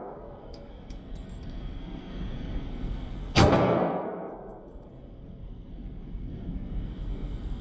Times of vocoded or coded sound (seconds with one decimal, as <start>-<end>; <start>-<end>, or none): 0.0-7.6